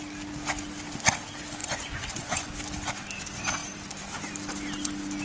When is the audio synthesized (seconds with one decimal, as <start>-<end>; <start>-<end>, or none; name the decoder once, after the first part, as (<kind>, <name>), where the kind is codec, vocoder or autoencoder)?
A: 1.6-2.5 (vocoder, Vocos)